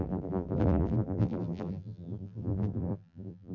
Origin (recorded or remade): remade